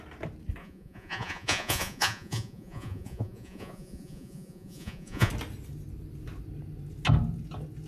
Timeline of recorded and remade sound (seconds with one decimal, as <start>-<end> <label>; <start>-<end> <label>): 0.0-0.6 recorded; 0.6-5.3 remade; 5.3-7.9 recorded